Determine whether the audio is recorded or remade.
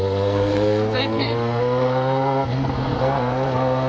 remade